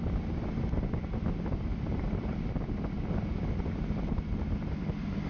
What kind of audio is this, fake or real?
real